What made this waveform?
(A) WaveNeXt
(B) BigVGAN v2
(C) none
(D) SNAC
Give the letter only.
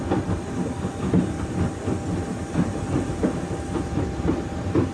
C